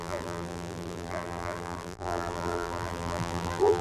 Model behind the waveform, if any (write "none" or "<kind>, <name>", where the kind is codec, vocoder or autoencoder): vocoder, BigVGAN v2